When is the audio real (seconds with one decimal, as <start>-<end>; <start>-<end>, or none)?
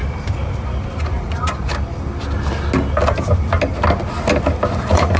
0.0-1.0; 1.7-4.8